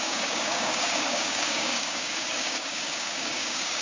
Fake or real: fake